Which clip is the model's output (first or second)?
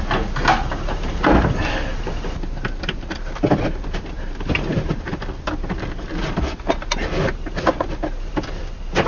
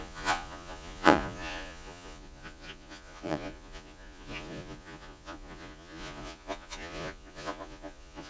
second